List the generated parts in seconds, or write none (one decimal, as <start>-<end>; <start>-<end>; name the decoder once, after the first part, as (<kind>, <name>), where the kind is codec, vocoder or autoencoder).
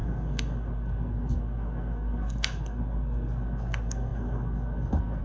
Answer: 0.0-5.2 (codec, SNAC)